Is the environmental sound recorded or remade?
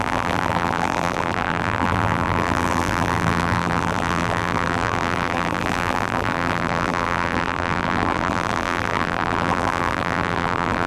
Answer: remade